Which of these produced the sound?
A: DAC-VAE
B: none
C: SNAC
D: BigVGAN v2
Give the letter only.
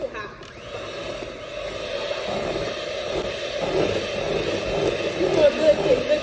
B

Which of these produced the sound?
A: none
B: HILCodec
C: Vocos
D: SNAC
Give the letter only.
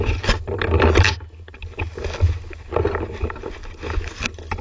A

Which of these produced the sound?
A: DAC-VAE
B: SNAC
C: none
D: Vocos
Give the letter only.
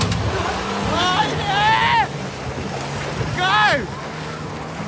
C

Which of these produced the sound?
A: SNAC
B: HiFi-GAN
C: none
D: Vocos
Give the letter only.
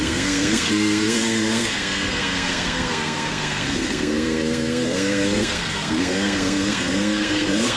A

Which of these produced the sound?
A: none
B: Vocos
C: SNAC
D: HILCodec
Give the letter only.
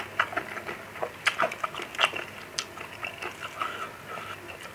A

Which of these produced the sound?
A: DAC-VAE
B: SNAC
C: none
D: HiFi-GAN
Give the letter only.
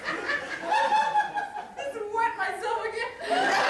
C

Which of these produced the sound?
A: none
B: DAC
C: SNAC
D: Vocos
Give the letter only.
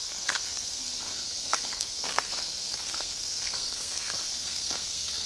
C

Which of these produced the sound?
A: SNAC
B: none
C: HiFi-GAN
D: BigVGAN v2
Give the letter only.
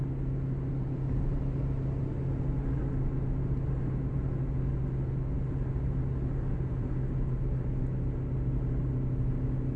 B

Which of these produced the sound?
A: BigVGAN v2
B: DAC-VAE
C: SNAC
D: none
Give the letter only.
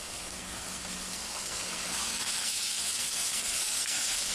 C